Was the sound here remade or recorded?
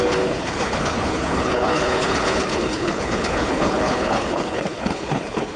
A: remade